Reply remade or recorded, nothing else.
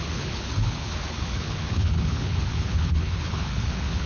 remade